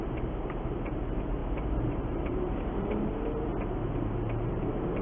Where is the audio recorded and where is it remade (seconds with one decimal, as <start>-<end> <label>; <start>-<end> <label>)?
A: 0.0-3.5 remade; 3.5-4.5 recorded; 4.5-5.0 remade